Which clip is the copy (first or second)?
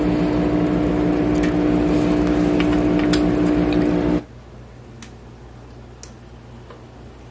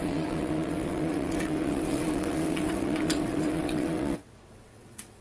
second